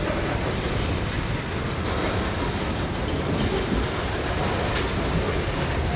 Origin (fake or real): real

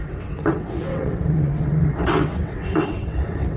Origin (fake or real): fake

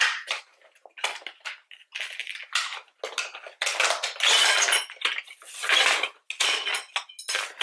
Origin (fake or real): real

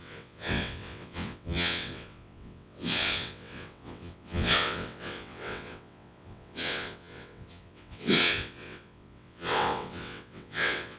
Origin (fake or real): fake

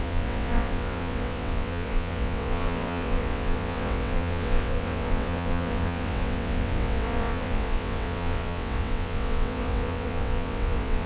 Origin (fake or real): fake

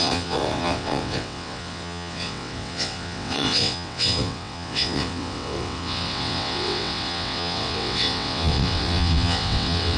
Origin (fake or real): fake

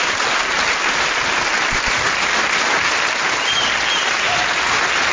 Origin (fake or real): real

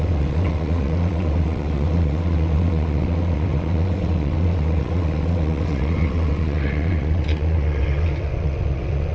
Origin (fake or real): fake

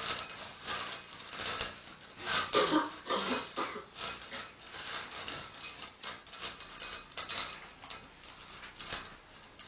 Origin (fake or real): real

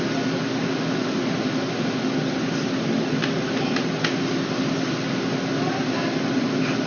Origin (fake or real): real